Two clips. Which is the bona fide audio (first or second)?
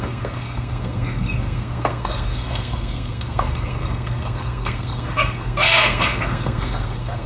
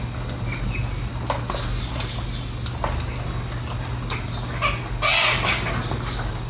second